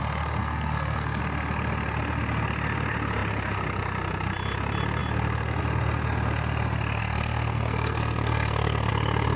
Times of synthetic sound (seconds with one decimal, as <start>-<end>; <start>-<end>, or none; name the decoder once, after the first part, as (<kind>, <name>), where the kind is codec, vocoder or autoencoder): 0.4-1.2 (codec, SNAC); 7.0-8.9